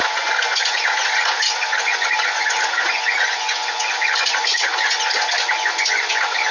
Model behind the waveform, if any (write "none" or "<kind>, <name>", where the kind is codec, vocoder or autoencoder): vocoder, Vocos